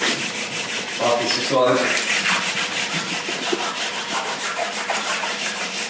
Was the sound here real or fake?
fake